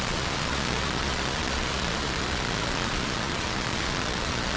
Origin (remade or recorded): remade